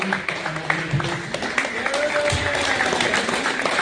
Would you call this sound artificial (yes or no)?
no